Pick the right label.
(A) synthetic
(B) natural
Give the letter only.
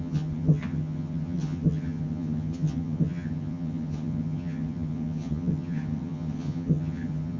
A